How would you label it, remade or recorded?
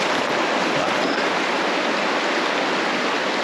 recorded